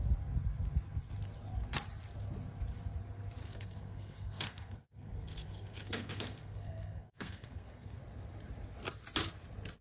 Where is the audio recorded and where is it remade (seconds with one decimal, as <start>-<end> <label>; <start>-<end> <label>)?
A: 0.0-3.4 recorded; 3.4-8.0 remade; 8.0-9.8 recorded